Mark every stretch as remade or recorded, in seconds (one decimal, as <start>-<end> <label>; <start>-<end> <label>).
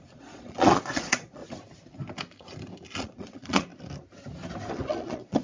0.0-1.4 remade; 1.4-3.0 recorded; 3.0-3.7 remade; 3.7-4.7 recorded; 4.7-5.4 remade